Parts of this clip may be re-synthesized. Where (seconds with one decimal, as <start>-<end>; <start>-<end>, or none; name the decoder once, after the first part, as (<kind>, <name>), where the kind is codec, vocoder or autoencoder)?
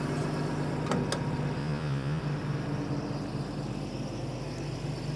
1.6-2.2 (vocoder, Vocos)